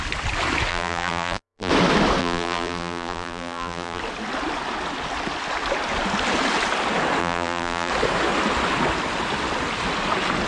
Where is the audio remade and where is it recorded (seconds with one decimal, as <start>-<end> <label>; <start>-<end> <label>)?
0.0-0.7 recorded; 0.7-1.7 remade; 1.7-2.2 recorded; 2.2-4.0 remade; 4.0-7.2 recorded; 7.2-7.9 remade; 7.9-10.5 recorded